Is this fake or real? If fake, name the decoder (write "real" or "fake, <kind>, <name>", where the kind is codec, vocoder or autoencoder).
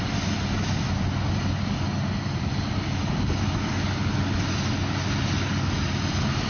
real